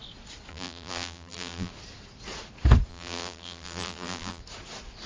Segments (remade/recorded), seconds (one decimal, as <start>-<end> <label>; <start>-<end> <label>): 0.0-0.5 recorded; 0.5-1.7 remade; 1.7-2.9 recorded; 2.9-4.4 remade; 4.4-5.1 recorded